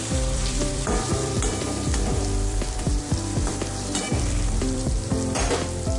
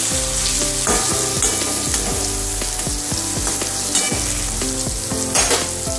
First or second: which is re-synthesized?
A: first